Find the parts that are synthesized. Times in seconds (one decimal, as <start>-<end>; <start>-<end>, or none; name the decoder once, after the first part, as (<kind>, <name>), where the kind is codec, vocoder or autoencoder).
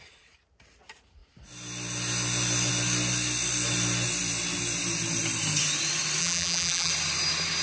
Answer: 6.2-6.9 (vocoder, BigVGAN v2)